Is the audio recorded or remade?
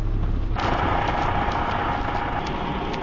recorded